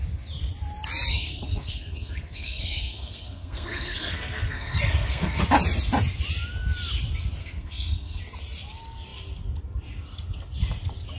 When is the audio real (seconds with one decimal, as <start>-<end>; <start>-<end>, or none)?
0.0-1.1; 5.4-7.4; 8.2-11.2